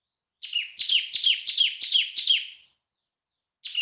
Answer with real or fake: real